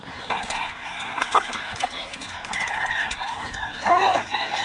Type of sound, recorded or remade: remade